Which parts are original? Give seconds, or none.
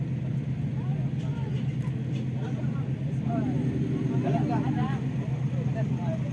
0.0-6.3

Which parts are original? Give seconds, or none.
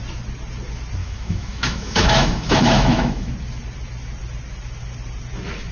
0.0-1.0; 3.3-5.7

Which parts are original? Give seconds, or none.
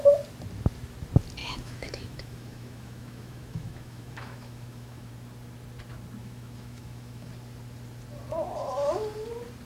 0.0-1.4; 5.1-6.2; 7.3-9.7